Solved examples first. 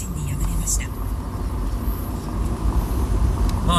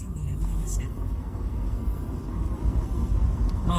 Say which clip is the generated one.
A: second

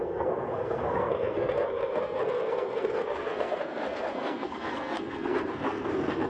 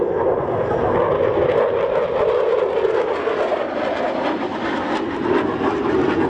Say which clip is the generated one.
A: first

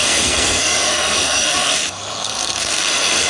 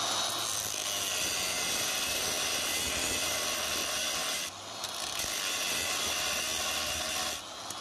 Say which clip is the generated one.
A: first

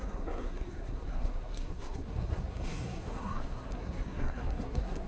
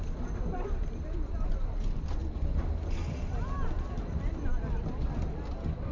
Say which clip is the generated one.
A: first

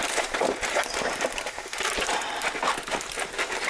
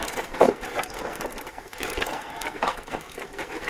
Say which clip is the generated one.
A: second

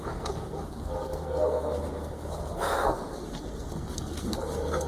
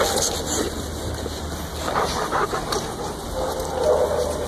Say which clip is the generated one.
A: first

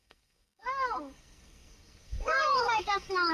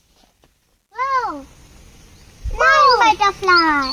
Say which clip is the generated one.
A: first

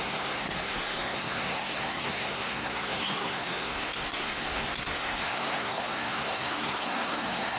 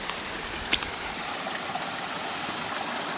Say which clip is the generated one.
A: first